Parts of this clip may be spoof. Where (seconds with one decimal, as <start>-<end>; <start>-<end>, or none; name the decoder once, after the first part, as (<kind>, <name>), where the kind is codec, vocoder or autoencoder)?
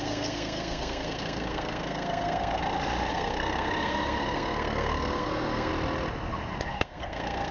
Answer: 0.0-2.6 (codec, SNAC); 3.1-5.7; 6.7-7.5